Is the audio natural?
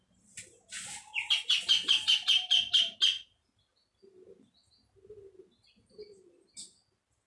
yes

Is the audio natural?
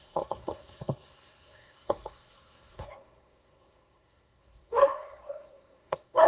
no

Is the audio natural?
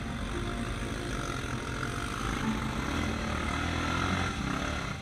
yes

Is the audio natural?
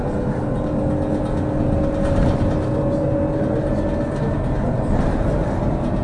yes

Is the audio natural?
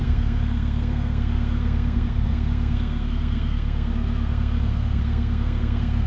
no